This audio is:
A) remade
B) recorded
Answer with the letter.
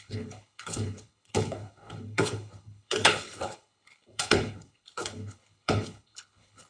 A